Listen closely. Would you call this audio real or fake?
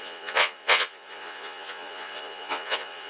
fake